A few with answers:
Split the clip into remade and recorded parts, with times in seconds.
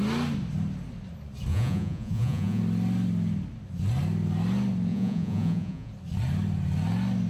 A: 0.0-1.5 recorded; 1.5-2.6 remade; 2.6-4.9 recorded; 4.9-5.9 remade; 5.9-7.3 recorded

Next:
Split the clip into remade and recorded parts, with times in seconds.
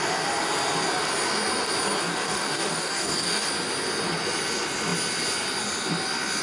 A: 0.0-2.0 recorded; 2.0-3.5 remade; 3.5-6.4 recorded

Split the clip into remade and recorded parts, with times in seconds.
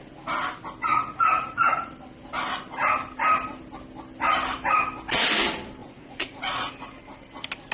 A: 0.0-0.9 recorded; 0.9-1.9 remade; 1.9-5.8 recorded; 5.8-6.7 remade; 6.7-7.7 recorded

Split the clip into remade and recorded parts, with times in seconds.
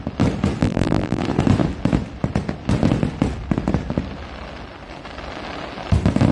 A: 0.0-0.6 recorded; 0.6-1.2 remade; 1.2-6.3 recorded